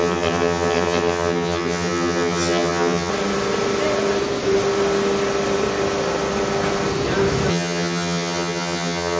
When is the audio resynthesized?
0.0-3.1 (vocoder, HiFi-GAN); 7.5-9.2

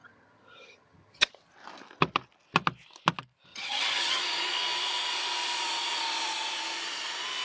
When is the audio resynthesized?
0.0-1.3 (vocoder, HiFi-GAN); 3.5-4.2

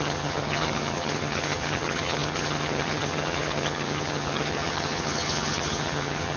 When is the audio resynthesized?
0.0-6.4 (vocoder, HiFi-GAN)

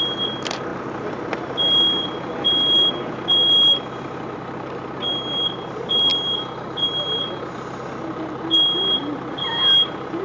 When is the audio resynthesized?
none

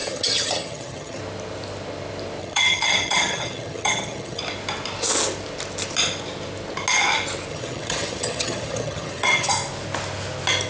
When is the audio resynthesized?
0.0-1.2 (vocoder, HiFi-GAN); 2.4-4.4; 7.5-9.5

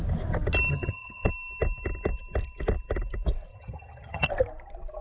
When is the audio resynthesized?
0.7-1.3 (vocoder, HiFi-GAN); 3.5-4.3